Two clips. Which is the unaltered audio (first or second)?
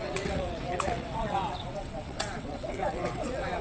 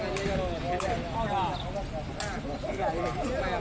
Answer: second